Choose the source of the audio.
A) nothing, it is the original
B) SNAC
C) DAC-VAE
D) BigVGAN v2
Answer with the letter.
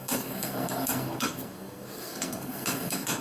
B